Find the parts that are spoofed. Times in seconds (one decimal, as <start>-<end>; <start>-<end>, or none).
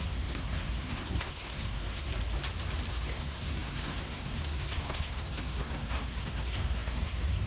0.0-2.1; 2.9-7.5